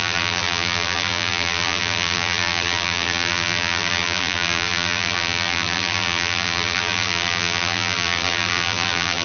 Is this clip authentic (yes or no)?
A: no